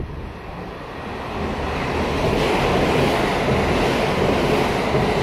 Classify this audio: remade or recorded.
recorded